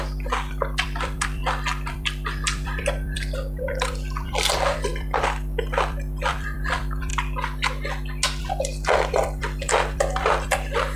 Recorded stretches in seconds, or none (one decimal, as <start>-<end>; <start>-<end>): 1.4-1.9; 7.1-8.4